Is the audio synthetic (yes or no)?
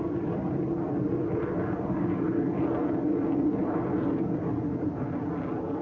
no